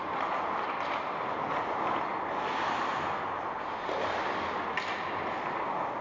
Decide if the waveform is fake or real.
real